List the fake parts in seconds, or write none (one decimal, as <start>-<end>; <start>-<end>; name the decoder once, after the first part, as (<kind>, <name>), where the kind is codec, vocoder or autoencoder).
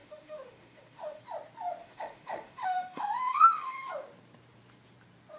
0.0-1.2 (autoencoder, DAC-VAE); 1.8-3.9